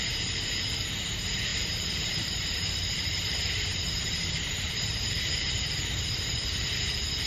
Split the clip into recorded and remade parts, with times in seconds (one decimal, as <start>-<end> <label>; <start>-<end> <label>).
0.0-7.3 remade